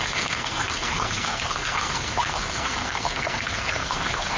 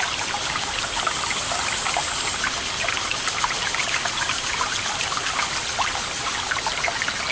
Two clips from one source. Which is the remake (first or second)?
first